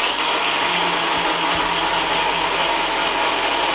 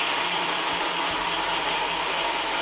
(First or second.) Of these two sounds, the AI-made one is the second